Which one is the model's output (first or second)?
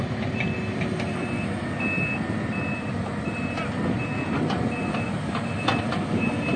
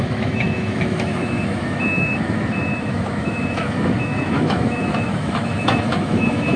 second